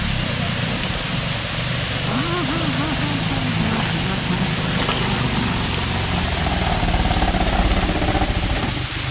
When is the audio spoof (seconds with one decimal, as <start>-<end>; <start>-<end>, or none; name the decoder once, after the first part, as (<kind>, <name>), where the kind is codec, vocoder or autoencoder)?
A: none